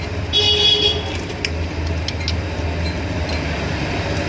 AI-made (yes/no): no